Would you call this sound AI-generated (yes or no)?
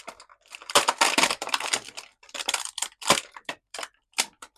yes